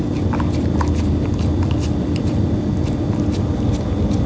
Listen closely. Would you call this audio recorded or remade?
recorded